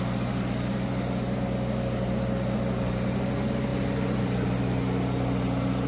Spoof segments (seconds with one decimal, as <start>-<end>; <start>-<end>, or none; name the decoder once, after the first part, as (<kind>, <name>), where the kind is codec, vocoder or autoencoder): none